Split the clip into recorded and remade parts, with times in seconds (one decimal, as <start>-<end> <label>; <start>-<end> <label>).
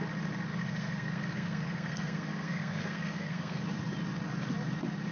0.0-0.5 recorded; 0.5-3.6 remade; 3.6-5.1 recorded